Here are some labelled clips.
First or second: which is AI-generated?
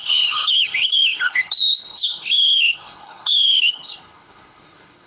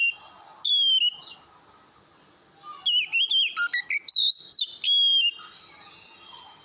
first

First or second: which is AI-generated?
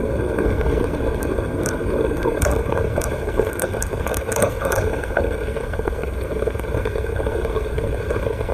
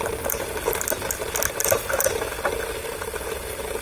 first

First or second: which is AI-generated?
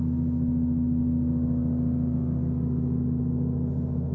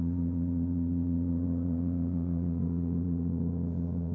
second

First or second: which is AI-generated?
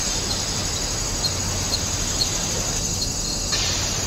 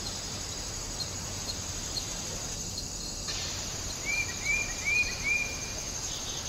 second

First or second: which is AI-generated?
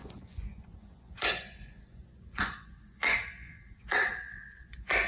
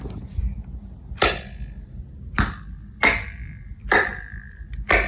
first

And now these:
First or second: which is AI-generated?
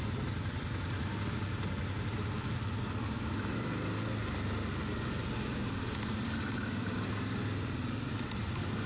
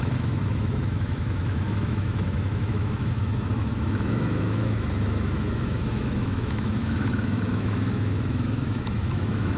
second